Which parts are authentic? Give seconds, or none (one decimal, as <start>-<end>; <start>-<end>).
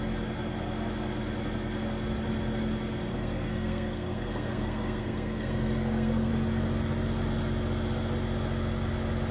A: 0.0-3.1; 6.3-9.3